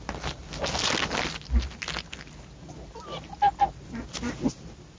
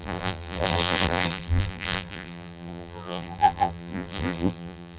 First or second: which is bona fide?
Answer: first